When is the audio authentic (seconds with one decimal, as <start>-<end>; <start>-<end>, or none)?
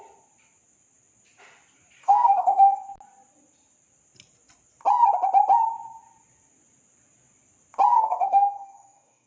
0.0-2.0; 2.8-7.9